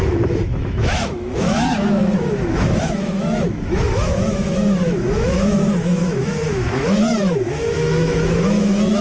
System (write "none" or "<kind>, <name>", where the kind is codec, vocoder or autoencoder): autoencoder, DAC-VAE